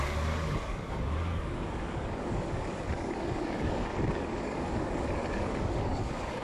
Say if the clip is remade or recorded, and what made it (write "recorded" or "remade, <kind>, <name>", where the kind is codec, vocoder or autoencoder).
remade, codec, DAC